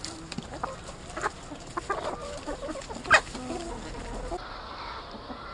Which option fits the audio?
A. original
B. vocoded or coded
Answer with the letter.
A